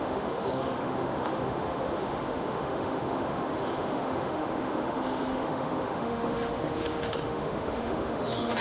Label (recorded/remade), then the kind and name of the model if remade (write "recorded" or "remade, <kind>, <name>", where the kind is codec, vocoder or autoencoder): remade, autoencoder, DAC-VAE